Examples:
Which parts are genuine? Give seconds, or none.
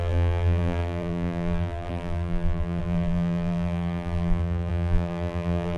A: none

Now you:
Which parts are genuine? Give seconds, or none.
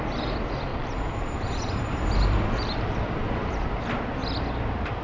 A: 0.0-0.7; 3.7-5.0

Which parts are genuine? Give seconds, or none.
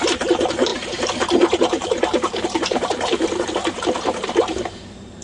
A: 0.0-0.7; 3.5-5.2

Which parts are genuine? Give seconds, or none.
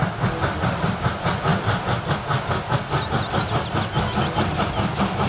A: 0.0-5.3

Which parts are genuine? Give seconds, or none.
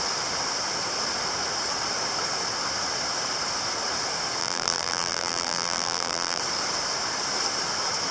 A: 0.0-4.4; 6.4-8.1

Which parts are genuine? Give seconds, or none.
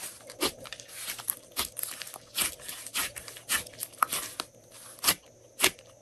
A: 1.2-6.0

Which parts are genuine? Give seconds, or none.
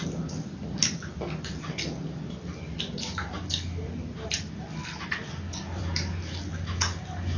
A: 0.0-5.8; 6.5-7.4